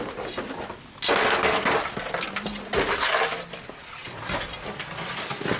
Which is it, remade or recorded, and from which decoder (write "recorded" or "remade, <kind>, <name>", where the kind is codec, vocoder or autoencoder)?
recorded